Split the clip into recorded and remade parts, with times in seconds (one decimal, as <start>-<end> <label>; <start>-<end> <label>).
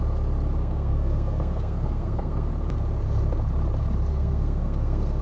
0.0-0.6 recorded; 0.6-2.5 remade; 2.5-4.1 recorded; 4.1-5.2 remade